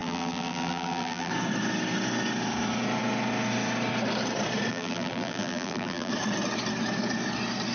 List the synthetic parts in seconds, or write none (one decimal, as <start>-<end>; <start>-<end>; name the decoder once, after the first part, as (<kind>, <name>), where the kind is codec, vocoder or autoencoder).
0.0-1.3 (vocoder, BigVGAN v2); 4.7-6.1